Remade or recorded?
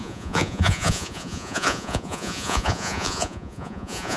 remade